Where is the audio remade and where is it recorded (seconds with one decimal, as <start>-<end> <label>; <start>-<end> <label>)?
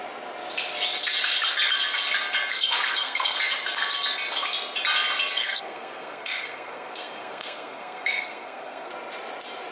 0.0-2.5 recorded; 2.5-3.4 remade; 3.4-5.4 recorded; 5.4-8.9 remade; 8.9-9.7 recorded